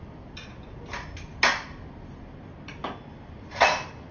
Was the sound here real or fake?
real